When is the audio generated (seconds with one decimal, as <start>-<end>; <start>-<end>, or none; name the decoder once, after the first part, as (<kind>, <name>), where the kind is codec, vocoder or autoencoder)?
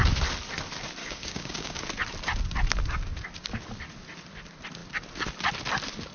1.0-1.8 (codec, DAC)